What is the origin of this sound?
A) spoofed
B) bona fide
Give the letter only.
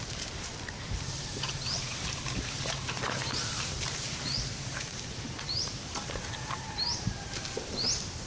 A